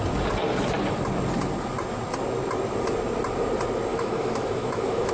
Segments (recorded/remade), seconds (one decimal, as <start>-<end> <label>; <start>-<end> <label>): 0.0-3.9 recorded; 3.9-5.1 remade

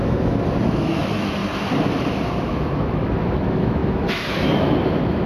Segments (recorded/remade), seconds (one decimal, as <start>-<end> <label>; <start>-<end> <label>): 0.0-1.4 remade; 1.4-2.5 recorded; 2.5-5.3 remade

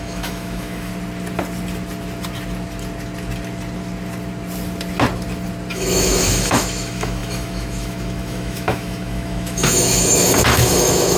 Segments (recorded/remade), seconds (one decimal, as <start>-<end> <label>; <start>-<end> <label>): 0.0-0.9 remade; 0.9-5.7 recorded; 5.7-11.2 remade